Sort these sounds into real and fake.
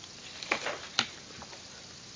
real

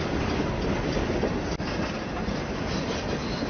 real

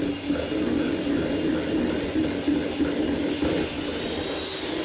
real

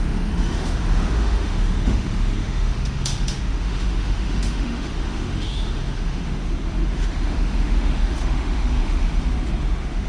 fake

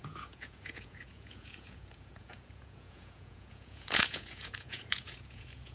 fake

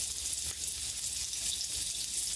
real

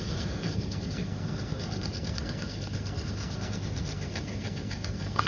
fake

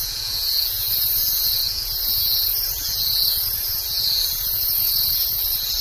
fake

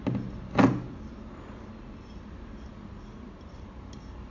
real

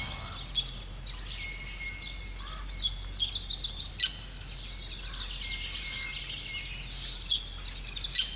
real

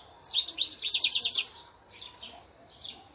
fake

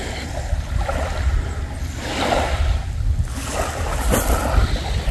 real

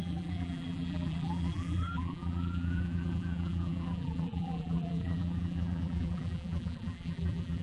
fake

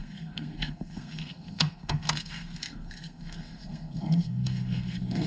fake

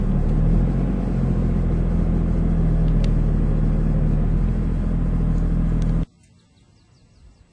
real